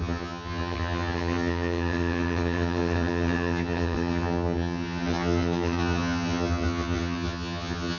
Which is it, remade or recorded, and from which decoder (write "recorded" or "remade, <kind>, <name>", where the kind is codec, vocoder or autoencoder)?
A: remade, vocoder, HiFi-GAN